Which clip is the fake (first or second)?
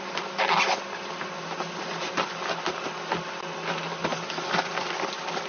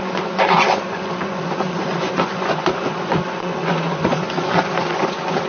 second